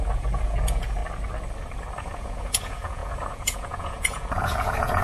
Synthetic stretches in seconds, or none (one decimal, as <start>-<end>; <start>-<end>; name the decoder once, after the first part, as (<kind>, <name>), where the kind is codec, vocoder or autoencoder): 0.0-1.0 (vocoder, Vocos); 2.0-5.0